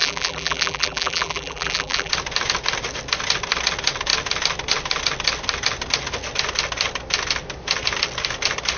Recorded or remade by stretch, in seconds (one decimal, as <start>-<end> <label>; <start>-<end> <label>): 0.0-2.1 remade; 2.1-8.8 recorded